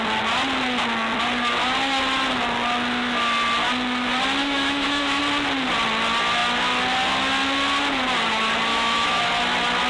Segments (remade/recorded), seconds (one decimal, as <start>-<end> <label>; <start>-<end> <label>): 0.0-4.4 recorded; 4.4-5.2 remade; 5.2-8.7 recorded; 8.7-9.2 remade; 9.2-9.9 recorded